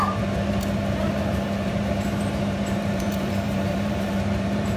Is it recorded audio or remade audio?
remade